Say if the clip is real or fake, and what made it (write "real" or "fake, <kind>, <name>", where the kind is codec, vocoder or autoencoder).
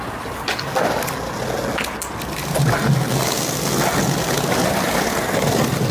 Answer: real